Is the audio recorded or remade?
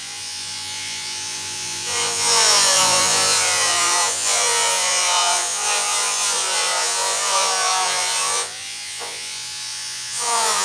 remade